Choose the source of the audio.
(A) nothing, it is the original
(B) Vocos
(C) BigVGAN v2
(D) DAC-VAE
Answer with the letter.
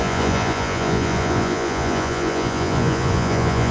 B